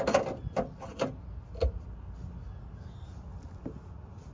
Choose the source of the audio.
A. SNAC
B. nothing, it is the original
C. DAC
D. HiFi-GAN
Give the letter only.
B